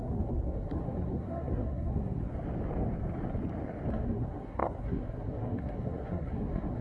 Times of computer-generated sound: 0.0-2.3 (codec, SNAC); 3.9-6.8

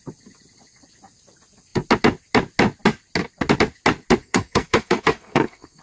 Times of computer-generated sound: 4.2-5.8 (codec, SNAC)

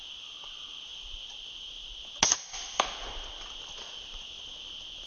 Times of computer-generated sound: none